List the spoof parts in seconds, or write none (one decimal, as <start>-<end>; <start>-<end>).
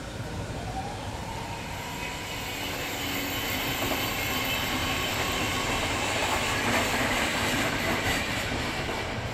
0.0-1.2; 3.4-6.2; 6.7-9.3